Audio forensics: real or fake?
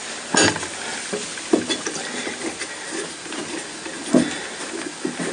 real